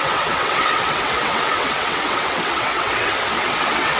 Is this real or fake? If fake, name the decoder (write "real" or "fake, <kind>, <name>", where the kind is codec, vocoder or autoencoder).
fake, vocoder, WaveNeXt